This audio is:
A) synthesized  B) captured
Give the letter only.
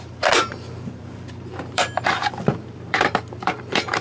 A